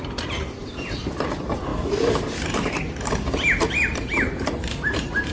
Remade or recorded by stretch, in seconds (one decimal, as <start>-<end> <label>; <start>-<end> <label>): 0.0-1.7 recorded; 1.7-5.3 remade